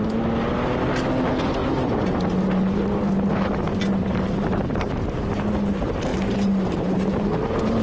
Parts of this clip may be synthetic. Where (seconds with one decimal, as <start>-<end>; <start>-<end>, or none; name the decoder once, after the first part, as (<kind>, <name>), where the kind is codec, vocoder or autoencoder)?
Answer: 1.6-2.1 (vocoder, BigVGAN v2); 3.9-4.9; 6.1-7.3